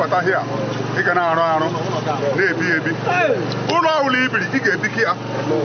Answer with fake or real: real